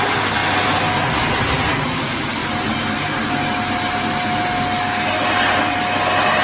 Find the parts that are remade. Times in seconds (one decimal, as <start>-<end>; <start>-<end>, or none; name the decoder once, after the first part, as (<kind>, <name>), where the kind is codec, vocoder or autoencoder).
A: none